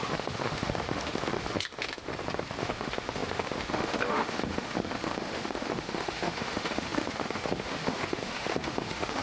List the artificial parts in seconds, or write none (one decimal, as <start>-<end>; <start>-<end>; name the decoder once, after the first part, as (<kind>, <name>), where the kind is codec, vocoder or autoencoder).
0.0-2.1 (autoencoder, DAC-VAE); 2.6-9.2